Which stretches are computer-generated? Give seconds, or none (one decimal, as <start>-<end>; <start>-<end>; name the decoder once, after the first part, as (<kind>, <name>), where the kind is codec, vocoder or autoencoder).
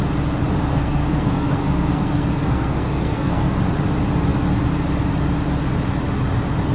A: 0.7-3.6 (codec, SNAC)